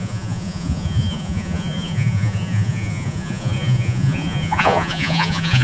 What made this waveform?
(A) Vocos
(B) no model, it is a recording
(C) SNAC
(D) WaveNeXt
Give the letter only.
A